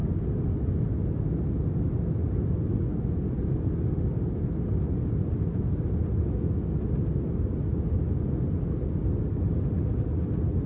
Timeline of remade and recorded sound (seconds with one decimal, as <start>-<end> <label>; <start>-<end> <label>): 0.0-10.7 recorded